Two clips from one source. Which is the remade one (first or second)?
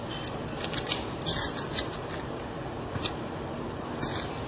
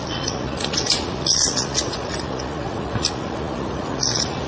second